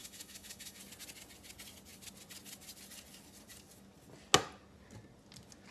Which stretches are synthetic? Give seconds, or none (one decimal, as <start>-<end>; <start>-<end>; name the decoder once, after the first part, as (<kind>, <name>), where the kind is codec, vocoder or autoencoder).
0.0-0.8 (autoencoder, DAC-VAE)